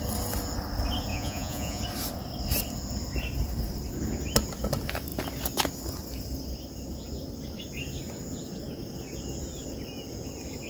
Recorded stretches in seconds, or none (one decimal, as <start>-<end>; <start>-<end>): 0.0-1.1; 1.8-10.7